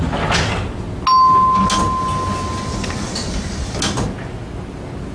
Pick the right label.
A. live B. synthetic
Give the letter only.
A